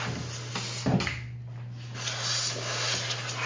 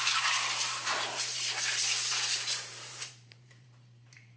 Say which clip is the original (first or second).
first